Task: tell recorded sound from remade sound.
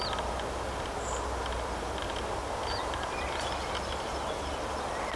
recorded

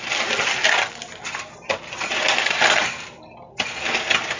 recorded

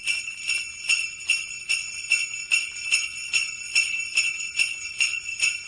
recorded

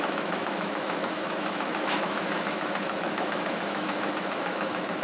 remade